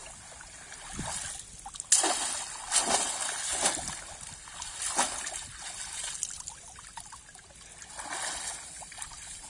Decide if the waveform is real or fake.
real